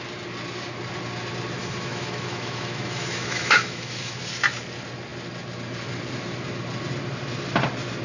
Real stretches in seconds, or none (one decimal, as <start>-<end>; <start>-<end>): 0.0-1.6; 4.2-8.0